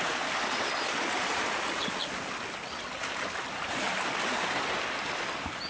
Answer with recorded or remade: recorded